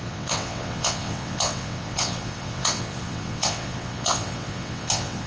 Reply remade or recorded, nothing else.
remade